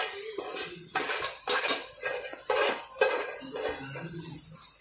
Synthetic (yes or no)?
no